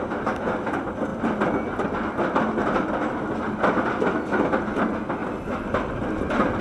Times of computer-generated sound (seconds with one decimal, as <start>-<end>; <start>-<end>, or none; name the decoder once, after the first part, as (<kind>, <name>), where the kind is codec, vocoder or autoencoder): none

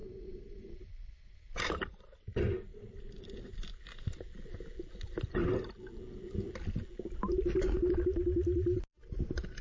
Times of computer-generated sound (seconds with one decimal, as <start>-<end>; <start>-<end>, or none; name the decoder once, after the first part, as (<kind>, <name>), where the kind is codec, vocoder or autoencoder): 0.0-2.2 (vocoder, BigVGAN v2); 2.7-3.7